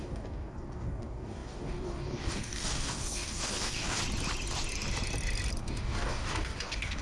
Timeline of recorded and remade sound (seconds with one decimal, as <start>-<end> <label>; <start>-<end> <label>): 0.0-4.0 remade; 4.0-5.6 recorded; 5.6-7.0 remade